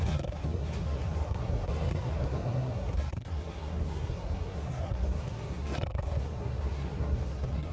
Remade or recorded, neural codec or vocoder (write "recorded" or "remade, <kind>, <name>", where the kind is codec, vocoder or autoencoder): remade, codec, SNAC